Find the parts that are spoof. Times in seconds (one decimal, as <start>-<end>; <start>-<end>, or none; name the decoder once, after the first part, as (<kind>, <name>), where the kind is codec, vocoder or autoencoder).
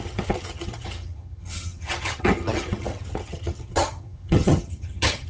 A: 0.0-5.3 (vocoder, HiFi-GAN)